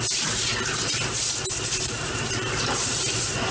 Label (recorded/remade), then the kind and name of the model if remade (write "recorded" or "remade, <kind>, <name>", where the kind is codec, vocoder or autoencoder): remade, vocoder, BigVGAN v2